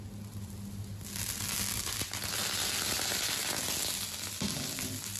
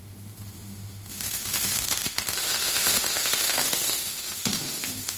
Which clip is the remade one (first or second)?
second